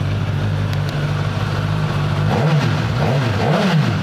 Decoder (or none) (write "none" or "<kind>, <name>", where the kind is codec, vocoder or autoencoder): none